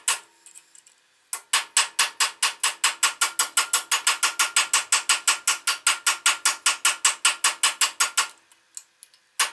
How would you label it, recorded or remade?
recorded